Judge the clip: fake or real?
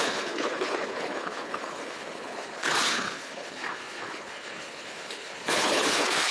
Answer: fake